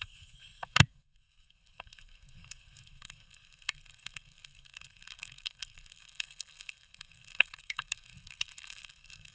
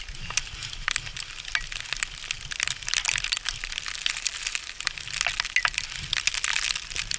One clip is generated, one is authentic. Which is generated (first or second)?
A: first